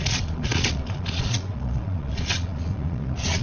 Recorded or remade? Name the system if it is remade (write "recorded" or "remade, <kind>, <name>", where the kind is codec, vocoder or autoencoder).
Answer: remade, vocoder, Vocos